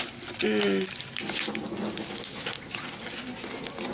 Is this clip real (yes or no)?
yes